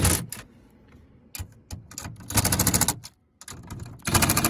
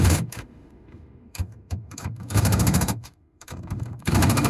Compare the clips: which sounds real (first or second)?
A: first